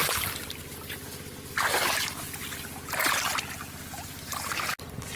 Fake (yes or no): no